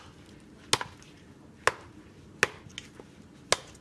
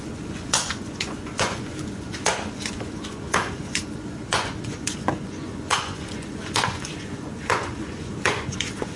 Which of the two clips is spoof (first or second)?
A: second